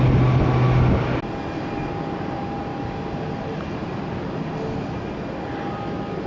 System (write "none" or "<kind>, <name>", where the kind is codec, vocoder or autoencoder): none